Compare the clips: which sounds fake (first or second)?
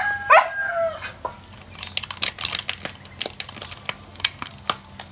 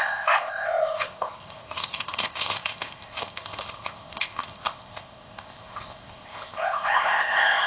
second